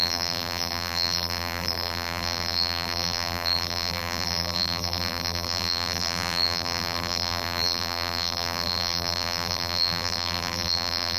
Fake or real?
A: fake